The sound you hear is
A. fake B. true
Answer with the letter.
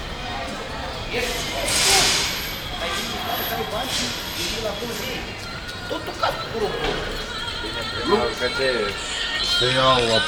B